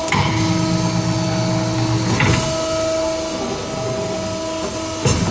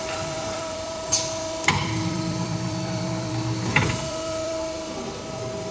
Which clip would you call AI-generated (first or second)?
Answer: second